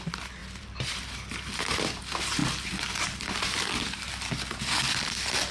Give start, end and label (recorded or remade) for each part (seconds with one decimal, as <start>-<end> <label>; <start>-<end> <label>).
0.0-0.4 recorded; 0.4-2.0 remade; 2.0-2.4 recorded; 2.4-2.9 remade; 2.9-5.5 recorded